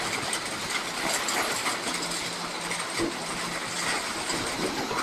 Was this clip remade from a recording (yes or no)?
no